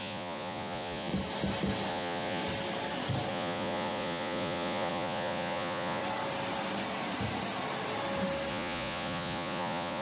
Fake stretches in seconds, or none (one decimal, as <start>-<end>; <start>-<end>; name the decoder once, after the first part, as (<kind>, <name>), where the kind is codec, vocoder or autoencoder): 0.0-1.1 (vocoder, Vocos); 1.9-2.4; 3.3-6.0; 8.5-10.0